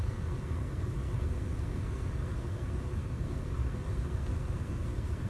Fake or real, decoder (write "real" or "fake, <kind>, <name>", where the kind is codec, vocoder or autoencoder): fake, codec, SNAC